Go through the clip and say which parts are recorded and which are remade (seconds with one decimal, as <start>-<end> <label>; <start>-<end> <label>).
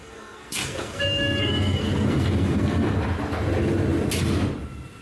0.0-3.0 remade; 3.0-5.0 recorded